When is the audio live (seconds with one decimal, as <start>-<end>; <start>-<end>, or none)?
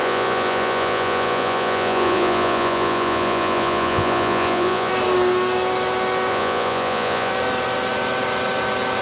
4.9-6.3; 7.3-9.0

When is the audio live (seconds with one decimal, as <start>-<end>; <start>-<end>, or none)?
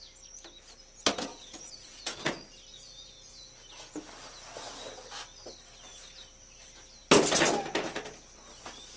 0.0-1.3; 2.3-2.7; 4.0-9.0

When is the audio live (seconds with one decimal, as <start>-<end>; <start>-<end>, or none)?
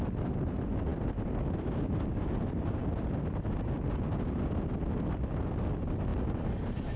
0.0-7.0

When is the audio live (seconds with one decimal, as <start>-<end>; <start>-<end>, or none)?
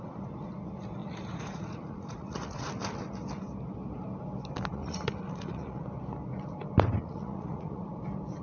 0.0-1.0; 2.7-4.7; 5.8-7.0; 7.9-8.4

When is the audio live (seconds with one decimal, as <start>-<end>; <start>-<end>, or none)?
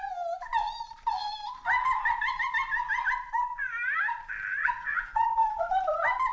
0.0-4.6; 5.7-6.3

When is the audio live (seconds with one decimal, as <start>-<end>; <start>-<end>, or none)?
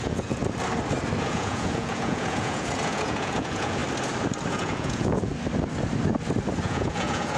0.4-1.3; 3.8-4.5; 5.3-6.6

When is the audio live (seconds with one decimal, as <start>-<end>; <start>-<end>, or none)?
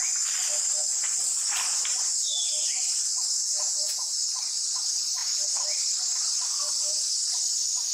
0.0-3.4; 4.1-7.9